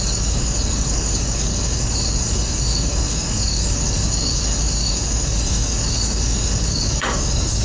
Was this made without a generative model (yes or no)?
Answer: no